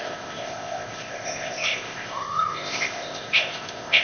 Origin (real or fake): fake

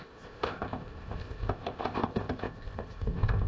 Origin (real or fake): fake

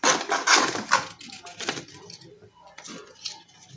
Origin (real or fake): real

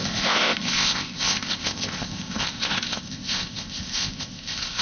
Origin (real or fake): fake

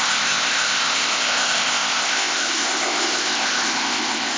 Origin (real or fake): fake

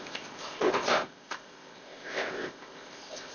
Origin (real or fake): fake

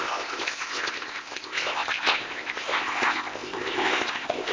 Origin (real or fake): fake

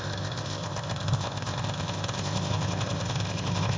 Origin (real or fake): fake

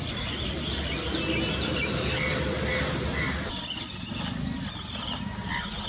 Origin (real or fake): real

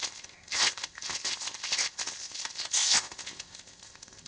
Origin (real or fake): fake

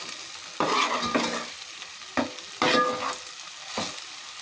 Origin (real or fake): real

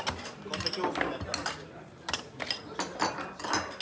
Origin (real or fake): real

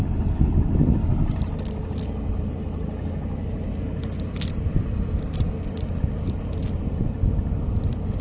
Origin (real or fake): real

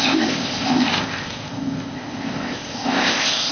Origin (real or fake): fake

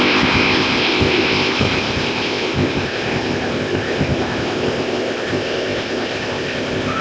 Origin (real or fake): fake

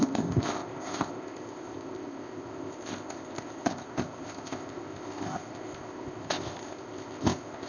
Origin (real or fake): fake